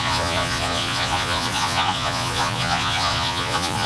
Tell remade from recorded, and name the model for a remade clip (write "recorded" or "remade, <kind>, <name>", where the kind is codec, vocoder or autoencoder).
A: remade, vocoder, Vocos